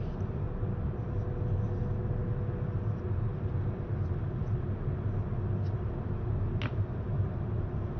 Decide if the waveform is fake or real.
real